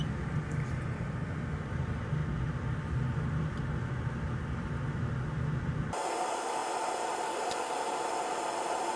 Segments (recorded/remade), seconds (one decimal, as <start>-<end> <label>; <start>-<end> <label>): 0.0-9.0 recorded